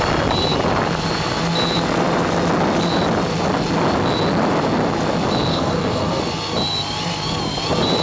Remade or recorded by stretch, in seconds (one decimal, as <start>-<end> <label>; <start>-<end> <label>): 0.0-5.5 recorded; 5.5-6.2 remade; 6.2-8.0 recorded